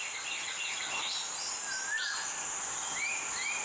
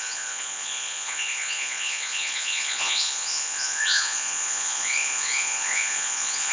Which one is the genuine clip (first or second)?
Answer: first